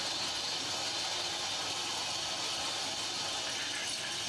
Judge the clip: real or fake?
real